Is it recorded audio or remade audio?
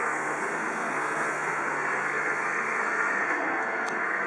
remade